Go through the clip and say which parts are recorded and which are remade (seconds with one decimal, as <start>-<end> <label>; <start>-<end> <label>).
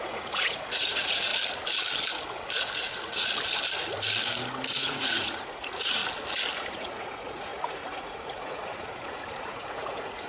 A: 0.0-1.3 remade; 1.3-4.7 recorded; 4.7-6.0 remade; 6.0-6.7 recorded; 6.7-10.3 remade